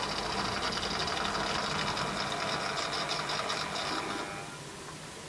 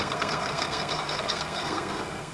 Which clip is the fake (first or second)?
second